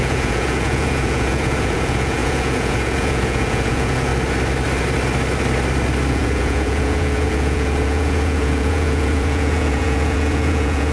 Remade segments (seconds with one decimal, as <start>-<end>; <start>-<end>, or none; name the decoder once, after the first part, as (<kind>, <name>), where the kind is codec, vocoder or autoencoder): 0.0-4.1 (vocoder, Vocos); 6.1-10.9